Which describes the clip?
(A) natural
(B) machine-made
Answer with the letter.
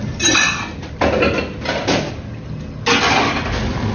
A